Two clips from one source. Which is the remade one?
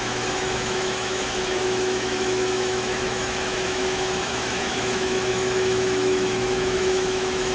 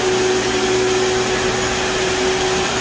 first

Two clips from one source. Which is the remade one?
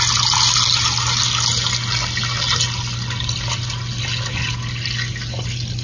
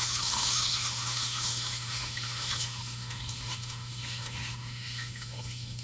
second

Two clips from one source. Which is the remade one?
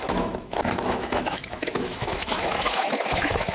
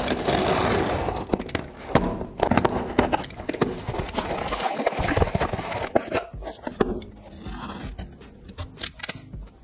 first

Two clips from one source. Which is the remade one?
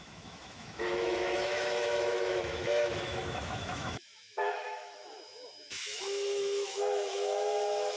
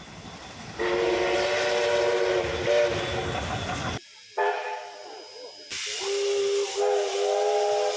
first